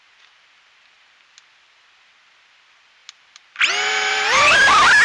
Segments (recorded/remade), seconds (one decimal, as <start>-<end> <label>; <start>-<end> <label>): 0.0-5.0 recorded